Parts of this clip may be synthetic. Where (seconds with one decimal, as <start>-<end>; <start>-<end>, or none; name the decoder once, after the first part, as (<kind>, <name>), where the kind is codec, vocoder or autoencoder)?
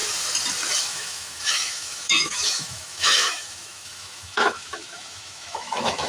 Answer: 0.8-6.1 (autoencoder, DAC-VAE)